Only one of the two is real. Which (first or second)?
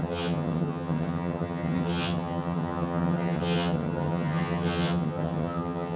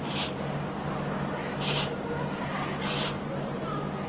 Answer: second